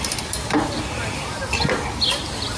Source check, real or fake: real